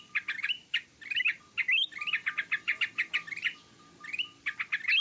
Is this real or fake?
real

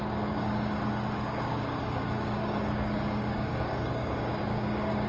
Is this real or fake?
fake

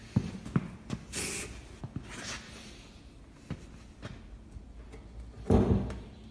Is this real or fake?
real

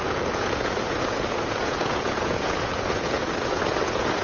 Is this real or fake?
fake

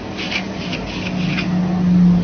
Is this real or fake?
real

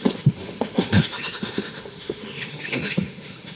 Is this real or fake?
fake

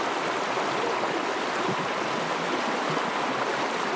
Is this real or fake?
real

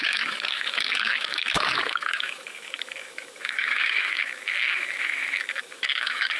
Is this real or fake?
fake